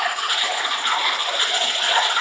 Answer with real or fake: real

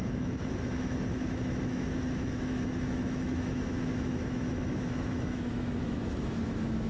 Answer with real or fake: fake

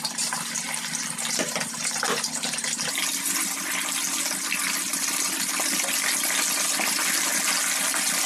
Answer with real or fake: real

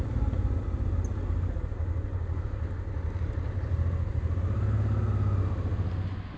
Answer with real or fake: real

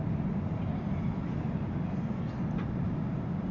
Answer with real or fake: real